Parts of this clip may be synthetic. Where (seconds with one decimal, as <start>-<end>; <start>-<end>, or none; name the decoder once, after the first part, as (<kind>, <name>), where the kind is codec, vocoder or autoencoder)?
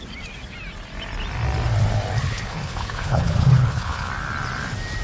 2.2-4.1 (codec, HILCodec)